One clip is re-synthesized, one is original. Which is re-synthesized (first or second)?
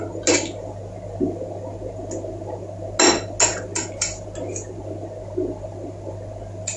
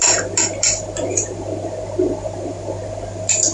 second